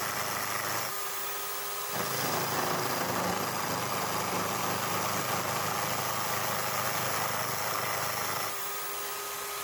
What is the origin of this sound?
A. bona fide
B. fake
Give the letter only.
A